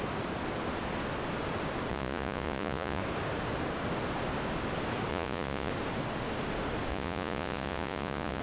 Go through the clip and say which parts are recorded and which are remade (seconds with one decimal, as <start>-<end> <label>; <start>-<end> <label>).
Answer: 0.0-1.9 recorded; 1.9-3.0 remade; 3.0-5.1 recorded; 5.1-5.7 remade; 5.7-6.9 recorded; 6.9-8.4 remade